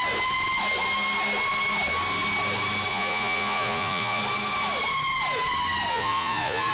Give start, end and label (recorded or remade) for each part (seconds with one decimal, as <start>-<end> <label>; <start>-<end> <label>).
0.0-2.9 recorded; 2.9-4.2 remade; 4.2-5.9 recorded; 5.9-6.7 remade